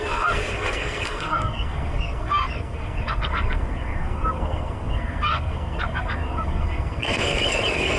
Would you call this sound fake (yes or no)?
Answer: yes